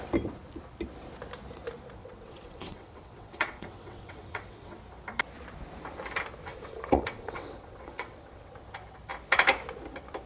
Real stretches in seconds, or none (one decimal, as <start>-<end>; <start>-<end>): 0.0-2.0; 4.8-6.5; 8.5-10.3

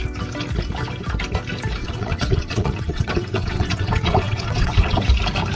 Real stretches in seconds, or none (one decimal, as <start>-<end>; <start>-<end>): 0.0-1.8; 5.1-5.5

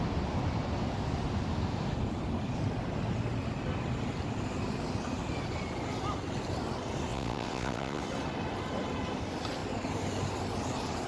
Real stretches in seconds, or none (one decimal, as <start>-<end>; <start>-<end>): 0.0-7.1; 8.0-11.1